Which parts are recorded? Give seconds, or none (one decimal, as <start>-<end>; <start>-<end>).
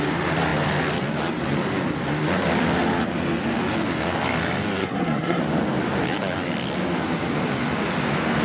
0.0-4.8; 5.4-8.4